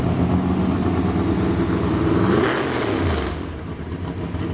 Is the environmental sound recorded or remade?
recorded